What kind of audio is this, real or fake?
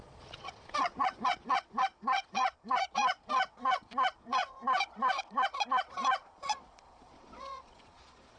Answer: fake